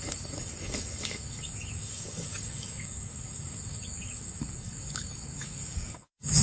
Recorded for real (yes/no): no